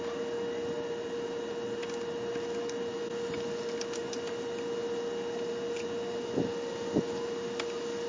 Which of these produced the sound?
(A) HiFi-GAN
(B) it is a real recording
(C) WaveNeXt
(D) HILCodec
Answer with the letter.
B